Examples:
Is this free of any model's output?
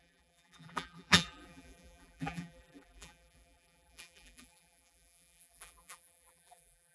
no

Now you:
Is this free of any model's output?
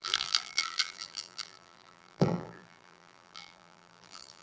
no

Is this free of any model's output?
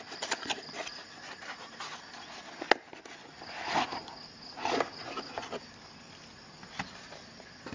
yes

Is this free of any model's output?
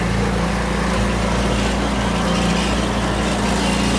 yes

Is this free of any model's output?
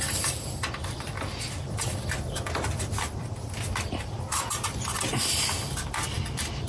no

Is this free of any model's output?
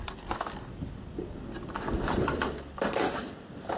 no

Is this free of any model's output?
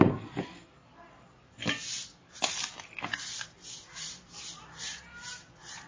no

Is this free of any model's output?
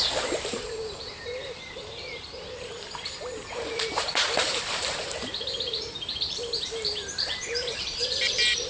no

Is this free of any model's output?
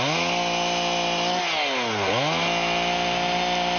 yes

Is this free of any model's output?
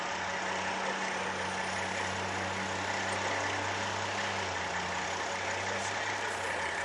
yes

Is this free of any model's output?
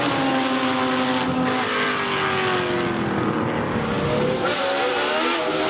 yes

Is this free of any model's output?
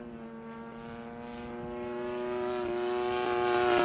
yes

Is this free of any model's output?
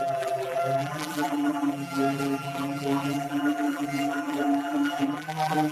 no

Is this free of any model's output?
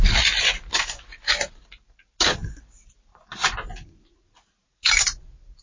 yes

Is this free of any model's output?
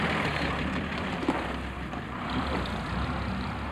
no